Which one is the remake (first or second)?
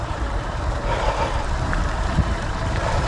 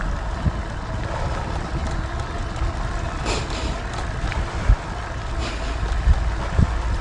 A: first